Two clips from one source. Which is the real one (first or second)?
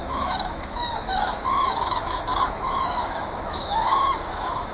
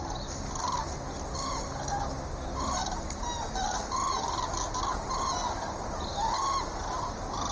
second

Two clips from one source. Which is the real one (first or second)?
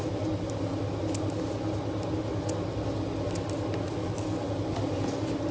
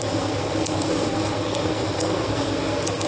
first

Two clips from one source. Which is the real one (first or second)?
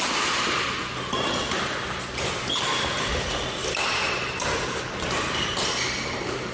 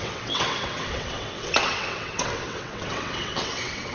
first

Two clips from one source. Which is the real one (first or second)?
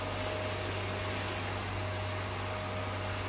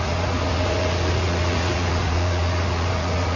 first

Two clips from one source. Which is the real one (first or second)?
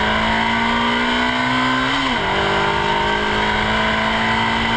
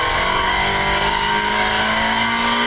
first